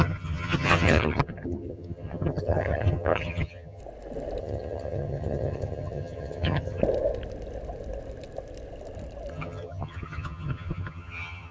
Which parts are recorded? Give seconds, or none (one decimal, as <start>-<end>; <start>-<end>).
3.8-4.4; 6.8-9.3